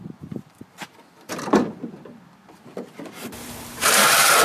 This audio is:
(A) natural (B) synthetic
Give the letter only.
B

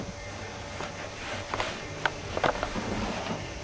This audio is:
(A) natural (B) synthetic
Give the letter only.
B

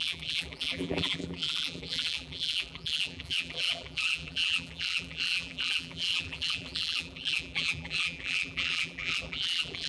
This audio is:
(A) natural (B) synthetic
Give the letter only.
B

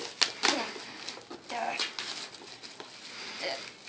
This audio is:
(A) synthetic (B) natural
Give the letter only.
B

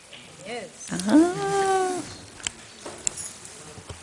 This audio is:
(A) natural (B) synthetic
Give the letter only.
A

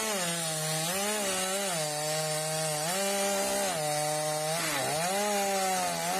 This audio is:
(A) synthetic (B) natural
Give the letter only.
B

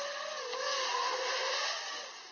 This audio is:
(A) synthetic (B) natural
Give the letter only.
B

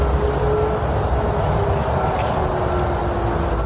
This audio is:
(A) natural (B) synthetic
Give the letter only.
A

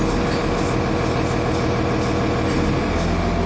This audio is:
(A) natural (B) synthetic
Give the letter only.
A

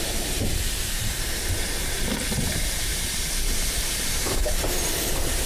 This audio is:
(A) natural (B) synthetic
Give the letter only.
B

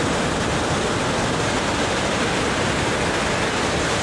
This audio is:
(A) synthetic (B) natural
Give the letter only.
B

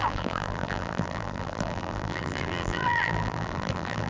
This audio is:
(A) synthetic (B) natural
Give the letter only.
A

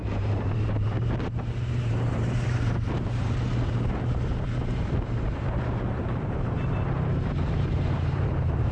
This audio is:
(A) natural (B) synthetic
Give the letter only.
B